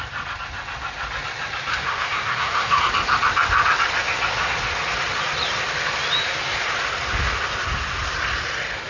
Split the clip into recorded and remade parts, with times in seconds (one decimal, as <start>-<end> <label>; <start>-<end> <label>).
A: 0.0-1.7 recorded; 1.7-2.8 remade; 2.8-8.9 recorded